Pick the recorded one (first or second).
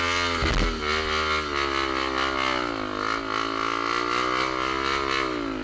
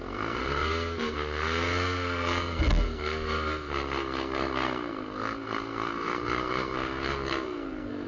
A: first